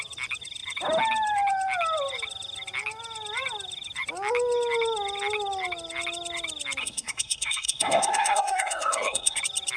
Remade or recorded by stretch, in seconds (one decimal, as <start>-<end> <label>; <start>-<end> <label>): 0.0-6.8 recorded; 6.8-9.4 remade; 9.4-9.8 recorded